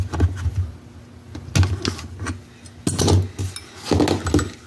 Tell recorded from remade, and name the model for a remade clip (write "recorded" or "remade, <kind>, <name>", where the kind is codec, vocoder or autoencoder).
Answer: recorded